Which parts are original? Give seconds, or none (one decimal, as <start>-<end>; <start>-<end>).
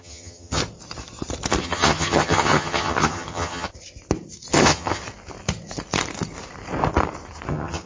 0.6-1.6; 3.7-4.5; 5.0-7.5